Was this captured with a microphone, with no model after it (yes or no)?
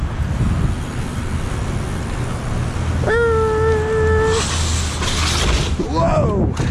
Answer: yes